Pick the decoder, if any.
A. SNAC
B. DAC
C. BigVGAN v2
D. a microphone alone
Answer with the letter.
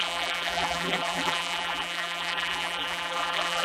C